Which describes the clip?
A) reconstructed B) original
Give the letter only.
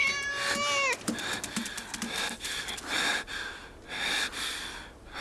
B